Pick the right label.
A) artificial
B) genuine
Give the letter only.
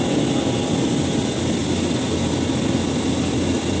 B